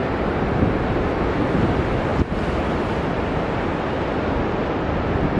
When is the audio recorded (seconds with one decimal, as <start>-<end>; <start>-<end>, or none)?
0.5-5.4